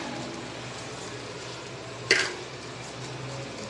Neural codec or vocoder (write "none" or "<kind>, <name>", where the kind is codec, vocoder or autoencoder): none